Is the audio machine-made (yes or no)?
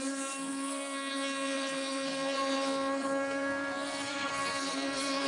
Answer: yes